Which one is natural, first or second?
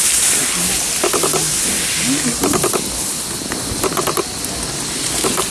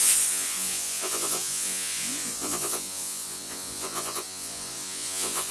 first